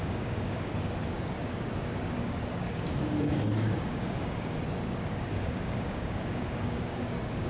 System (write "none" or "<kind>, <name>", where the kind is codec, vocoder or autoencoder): codec, DAC